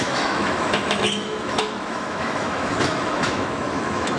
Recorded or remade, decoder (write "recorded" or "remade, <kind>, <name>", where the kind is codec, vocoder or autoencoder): remade, autoencoder, DAC-VAE